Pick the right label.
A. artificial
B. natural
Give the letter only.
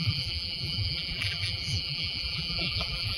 A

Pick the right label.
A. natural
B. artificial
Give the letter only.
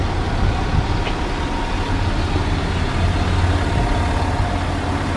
A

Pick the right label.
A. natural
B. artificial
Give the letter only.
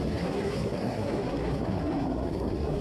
B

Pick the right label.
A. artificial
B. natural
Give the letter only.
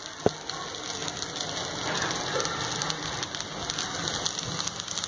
B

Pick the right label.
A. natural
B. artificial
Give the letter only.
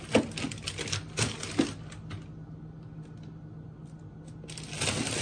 A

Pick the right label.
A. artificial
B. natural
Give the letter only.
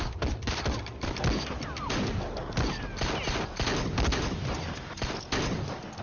B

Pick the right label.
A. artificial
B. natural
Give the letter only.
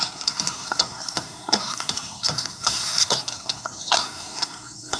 A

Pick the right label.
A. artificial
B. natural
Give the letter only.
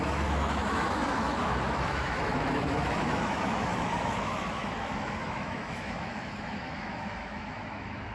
A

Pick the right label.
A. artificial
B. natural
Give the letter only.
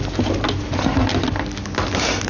B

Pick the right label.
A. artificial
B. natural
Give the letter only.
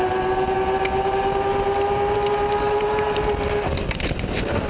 B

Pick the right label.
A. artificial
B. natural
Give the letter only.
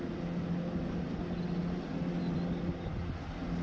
B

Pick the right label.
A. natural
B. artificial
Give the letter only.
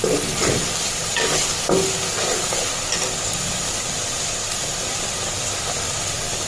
A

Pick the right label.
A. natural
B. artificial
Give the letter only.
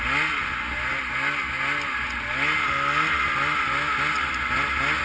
A